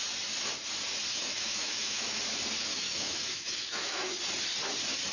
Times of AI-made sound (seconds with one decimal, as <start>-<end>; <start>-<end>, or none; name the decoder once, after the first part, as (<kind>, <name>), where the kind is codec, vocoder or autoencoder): 1.1-2.2 (autoencoder, DAC-VAE); 2.7-4.1